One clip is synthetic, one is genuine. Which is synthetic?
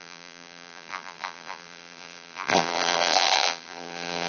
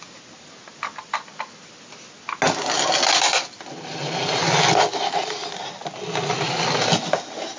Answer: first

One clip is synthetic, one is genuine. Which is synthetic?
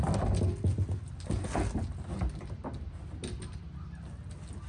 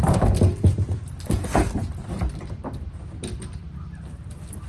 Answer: second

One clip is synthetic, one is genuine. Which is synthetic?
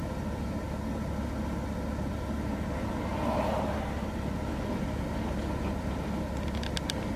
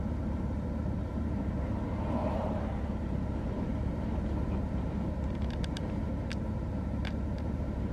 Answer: second